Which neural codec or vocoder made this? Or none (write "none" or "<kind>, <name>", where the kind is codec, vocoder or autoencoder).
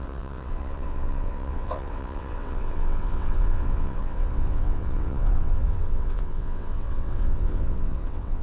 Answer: vocoder, WaveNeXt